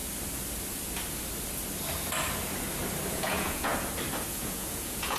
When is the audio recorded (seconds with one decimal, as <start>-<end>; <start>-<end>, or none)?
0.0-3.1; 3.7-4.3